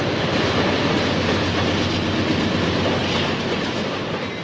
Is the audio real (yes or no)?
yes